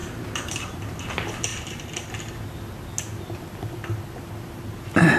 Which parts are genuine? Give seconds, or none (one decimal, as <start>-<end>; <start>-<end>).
0.9-5.2